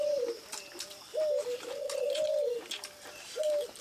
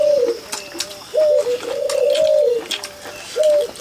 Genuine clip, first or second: second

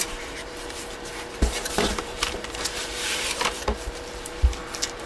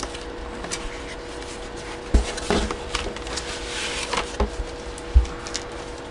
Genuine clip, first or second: second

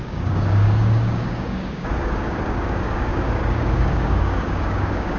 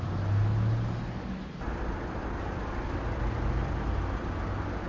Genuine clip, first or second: second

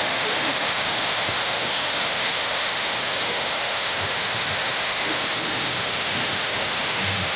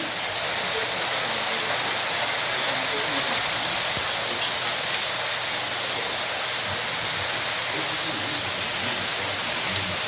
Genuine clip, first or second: second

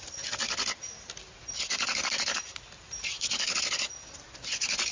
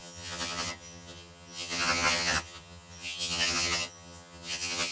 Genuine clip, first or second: first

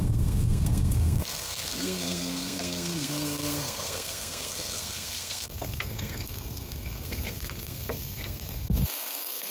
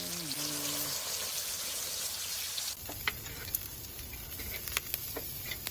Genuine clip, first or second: second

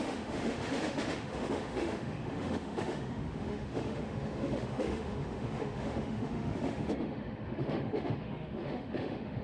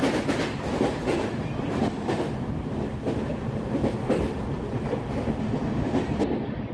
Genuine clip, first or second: second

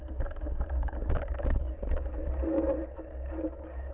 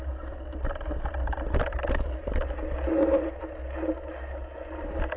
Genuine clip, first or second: second